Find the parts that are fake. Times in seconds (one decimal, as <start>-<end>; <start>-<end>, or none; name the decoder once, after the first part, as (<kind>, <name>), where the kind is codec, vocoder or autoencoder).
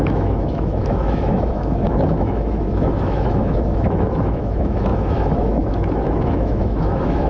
0.0-7.3 (autoencoder, DAC-VAE)